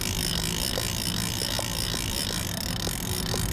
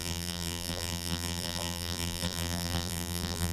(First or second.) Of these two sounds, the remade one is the second